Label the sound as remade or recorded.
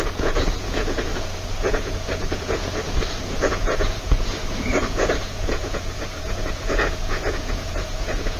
remade